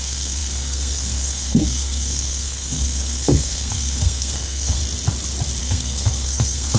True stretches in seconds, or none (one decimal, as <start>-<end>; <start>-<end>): 4.8-5.6